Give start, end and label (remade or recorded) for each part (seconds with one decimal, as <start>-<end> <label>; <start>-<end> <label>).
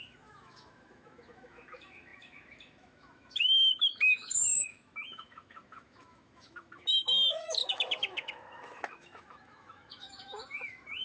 0.0-11.0 remade